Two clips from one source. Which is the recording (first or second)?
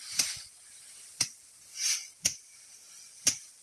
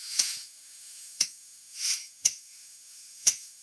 first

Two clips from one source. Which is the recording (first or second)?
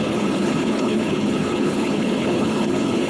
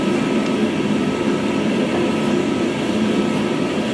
second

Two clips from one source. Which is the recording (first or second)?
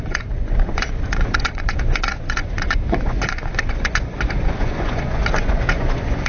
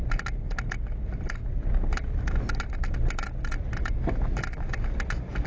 second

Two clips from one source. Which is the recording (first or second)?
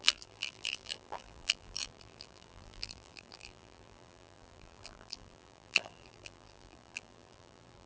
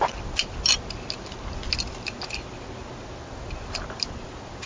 second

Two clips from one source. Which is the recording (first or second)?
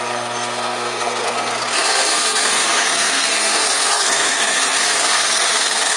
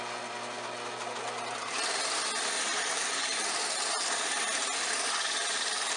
second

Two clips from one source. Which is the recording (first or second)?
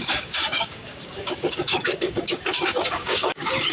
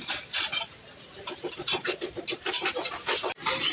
second